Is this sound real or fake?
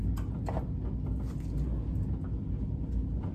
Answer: real